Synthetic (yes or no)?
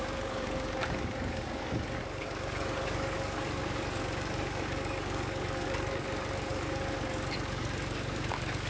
yes